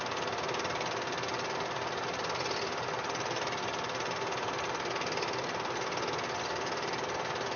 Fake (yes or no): no